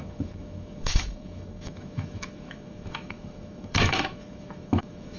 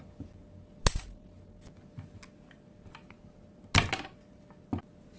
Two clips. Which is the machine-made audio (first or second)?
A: first